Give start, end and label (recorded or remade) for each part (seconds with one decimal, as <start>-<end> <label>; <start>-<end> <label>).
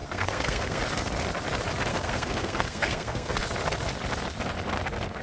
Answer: 0.0-0.8 remade; 0.8-1.9 recorded; 1.9-3.4 remade; 3.4-5.2 recorded